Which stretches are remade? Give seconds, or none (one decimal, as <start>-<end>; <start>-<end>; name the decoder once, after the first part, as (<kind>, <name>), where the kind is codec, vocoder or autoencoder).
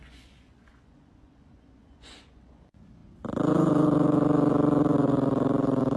0.0-3.0 (vocoder, Vocos)